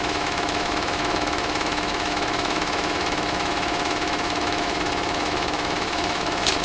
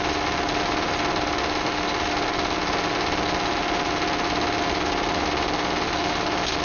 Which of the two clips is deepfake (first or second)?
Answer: first